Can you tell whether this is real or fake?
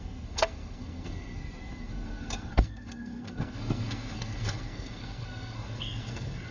fake